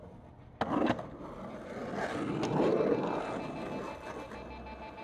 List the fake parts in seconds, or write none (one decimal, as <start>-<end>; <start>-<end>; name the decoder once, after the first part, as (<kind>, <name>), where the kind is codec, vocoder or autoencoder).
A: none